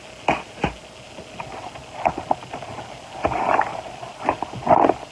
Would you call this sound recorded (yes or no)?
yes